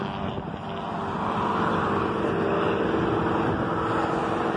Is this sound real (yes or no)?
yes